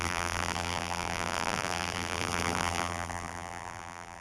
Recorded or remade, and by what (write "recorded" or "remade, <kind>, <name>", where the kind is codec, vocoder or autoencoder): remade, vocoder, BigVGAN v2